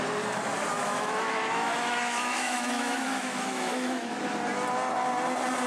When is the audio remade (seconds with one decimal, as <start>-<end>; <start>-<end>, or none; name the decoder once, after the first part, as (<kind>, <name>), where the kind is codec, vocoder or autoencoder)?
0.8-4.2 (autoencoder, DAC-VAE)